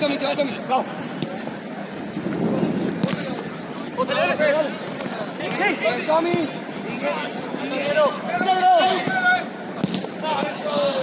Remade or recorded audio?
recorded